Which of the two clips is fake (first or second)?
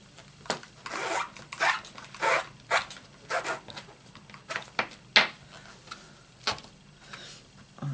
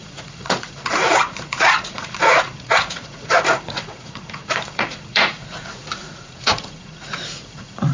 second